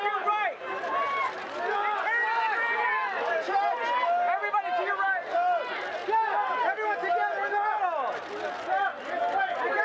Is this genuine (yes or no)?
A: yes